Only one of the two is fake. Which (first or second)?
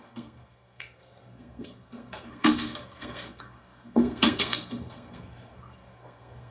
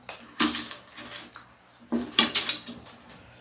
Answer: first